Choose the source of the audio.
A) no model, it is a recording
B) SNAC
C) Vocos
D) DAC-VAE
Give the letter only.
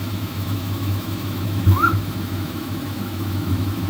D